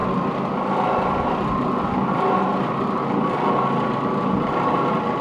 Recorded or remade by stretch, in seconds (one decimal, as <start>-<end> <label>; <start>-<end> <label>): 0.0-5.2 recorded